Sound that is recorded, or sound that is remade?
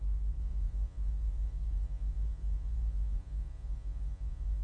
remade